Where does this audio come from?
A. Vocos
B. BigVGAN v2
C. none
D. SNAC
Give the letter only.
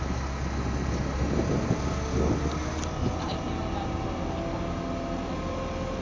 C